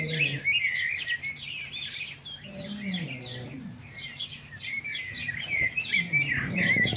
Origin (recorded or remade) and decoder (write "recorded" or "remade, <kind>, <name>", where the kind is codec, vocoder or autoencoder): remade, vocoder, BigVGAN v2